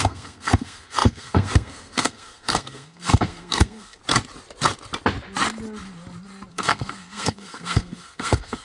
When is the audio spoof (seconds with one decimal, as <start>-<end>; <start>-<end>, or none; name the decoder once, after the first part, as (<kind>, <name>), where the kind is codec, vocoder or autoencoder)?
0.0-4.0 (codec, SNAC); 6.5-8.6